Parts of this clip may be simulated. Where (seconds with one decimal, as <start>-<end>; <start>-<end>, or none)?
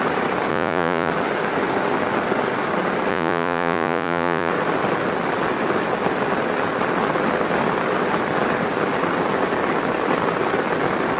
0.5-1.1; 3.1-4.5